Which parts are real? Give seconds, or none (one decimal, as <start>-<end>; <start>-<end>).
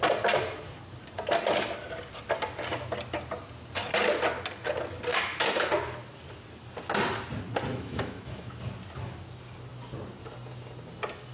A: 0.0-5.1; 5.7-7.7; 8.6-11.3